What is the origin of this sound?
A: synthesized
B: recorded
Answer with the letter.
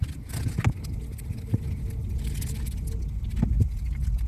B